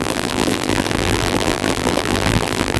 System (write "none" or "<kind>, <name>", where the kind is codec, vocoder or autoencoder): vocoder, BigVGAN v2